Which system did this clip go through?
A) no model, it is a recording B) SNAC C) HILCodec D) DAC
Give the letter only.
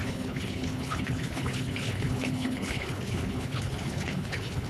C